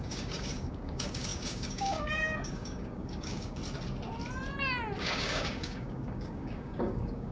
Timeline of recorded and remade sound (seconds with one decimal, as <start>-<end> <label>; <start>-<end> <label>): 0.0-3.6 remade; 3.6-5.0 recorded; 5.0-7.3 remade